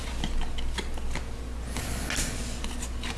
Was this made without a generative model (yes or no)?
yes